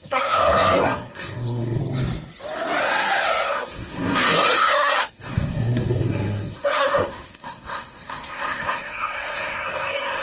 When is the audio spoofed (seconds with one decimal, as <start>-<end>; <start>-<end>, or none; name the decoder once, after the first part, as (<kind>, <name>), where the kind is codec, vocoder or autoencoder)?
0.0-1.8 (codec, SNAC); 2.8-10.2